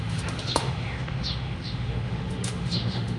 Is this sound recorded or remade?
remade